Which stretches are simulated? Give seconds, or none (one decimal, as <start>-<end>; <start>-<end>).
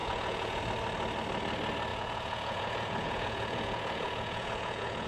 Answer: 0.0-0.6; 1.9-5.1